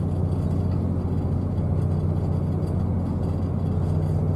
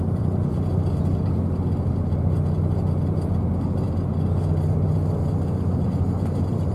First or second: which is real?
first